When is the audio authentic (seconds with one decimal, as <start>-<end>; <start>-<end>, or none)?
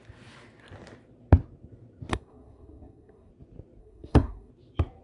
0.0-2.1; 3.3-3.8; 4.5-5.0